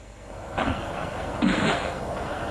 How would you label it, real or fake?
fake